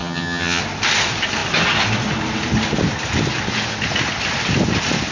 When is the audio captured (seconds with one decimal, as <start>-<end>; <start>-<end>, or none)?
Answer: 0.6-5.1